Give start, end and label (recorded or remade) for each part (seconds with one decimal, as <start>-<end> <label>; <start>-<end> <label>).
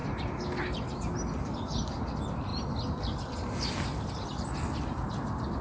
0.0-5.6 recorded